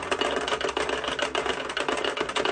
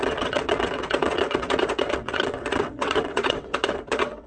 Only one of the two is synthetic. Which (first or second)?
second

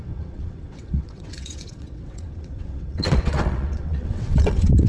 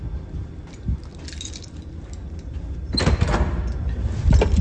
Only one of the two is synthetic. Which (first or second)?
first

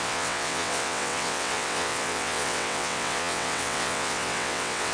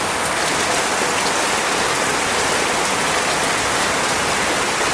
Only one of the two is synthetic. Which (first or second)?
first